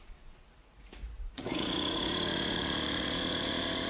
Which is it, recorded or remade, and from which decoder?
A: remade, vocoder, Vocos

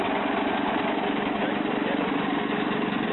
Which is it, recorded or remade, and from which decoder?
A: recorded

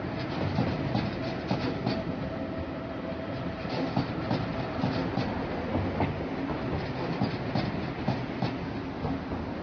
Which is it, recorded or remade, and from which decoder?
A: recorded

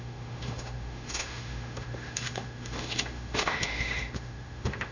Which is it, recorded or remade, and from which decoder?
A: remade, autoencoder, DAC-VAE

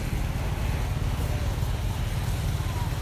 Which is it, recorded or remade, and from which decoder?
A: recorded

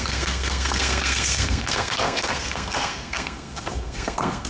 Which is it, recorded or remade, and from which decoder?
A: remade, codec, SNAC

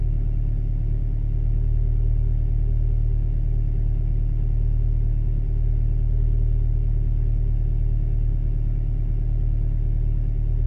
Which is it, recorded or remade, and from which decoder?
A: recorded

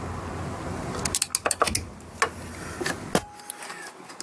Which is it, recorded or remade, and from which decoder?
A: recorded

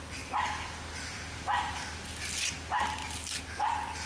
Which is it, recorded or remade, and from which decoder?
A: remade, vocoder, BigVGAN v2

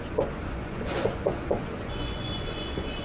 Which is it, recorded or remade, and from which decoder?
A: remade, vocoder, Vocos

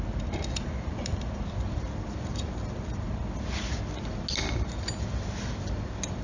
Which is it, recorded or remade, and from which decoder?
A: recorded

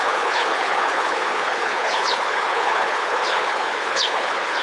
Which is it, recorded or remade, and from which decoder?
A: remade, codec, HILCodec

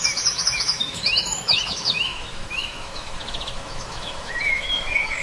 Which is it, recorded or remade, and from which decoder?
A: remade, autoencoder, DAC-VAE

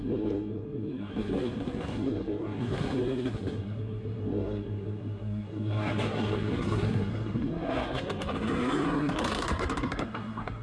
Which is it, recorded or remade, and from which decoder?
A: remade, codec, SNAC